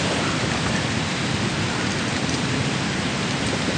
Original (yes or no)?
yes